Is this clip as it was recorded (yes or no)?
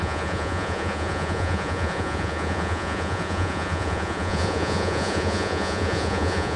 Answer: no